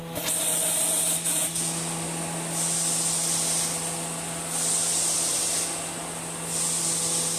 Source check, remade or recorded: recorded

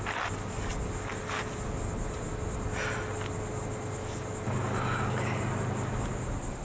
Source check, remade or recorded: recorded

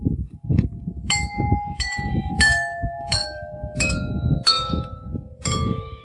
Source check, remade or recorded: remade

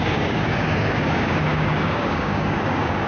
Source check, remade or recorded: remade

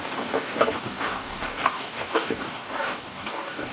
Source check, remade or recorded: remade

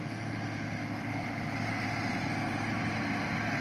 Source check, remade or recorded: recorded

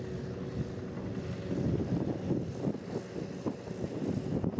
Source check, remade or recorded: recorded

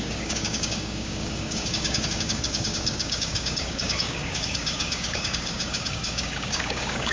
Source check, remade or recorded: remade